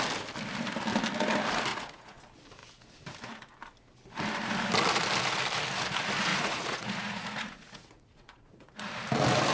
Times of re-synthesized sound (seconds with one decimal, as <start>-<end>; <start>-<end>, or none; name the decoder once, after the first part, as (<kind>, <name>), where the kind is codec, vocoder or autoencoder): 1.7-2.2 (vocoder, Vocos); 6.3-8.9